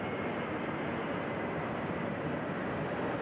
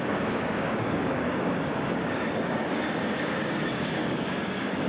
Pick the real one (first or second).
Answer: first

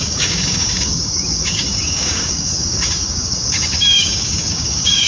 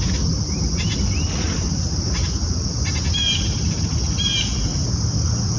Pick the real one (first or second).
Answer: second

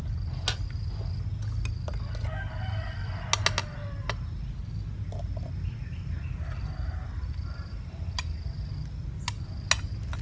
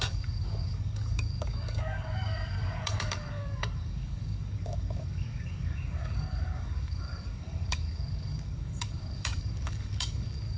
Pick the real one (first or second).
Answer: first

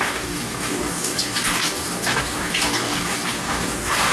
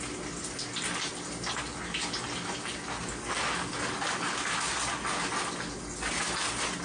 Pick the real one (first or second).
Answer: second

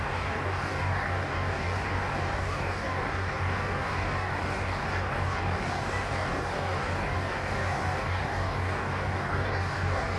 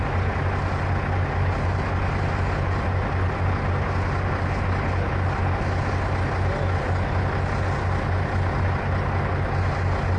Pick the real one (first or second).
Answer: second